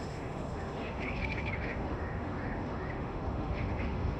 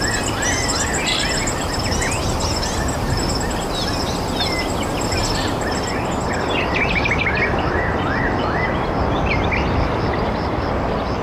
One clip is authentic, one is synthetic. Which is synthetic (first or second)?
first